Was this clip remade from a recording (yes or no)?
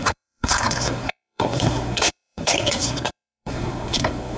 yes